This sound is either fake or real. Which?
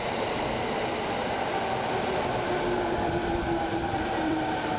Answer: fake